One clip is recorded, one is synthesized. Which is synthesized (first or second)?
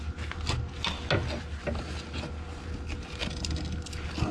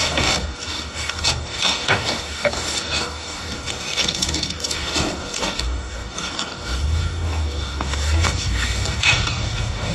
second